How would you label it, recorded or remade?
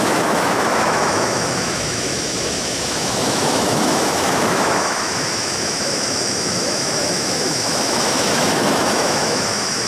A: remade